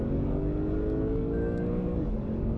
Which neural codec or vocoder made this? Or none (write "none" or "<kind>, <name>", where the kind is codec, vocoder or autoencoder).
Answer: codec, DAC